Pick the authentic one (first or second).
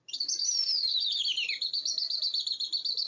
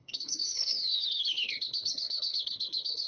first